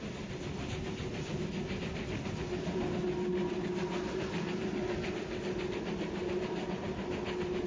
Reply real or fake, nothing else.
real